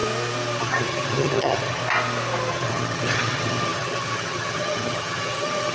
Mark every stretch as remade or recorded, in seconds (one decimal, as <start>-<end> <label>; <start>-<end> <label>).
0.0-0.6 recorded; 0.6-1.8 remade; 1.8-2.5 recorded; 2.5-5.7 remade